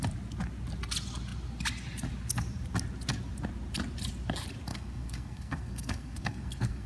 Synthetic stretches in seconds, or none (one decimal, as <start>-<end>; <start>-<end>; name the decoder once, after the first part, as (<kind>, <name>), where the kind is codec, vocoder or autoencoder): 4.7-6.9 (codec, SNAC)